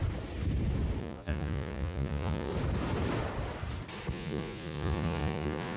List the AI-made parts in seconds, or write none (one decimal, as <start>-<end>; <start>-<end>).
1.0-2.5; 4.1-5.8